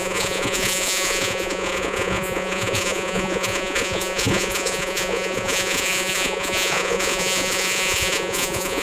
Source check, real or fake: fake